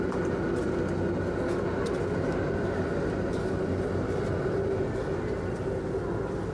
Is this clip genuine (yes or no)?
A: yes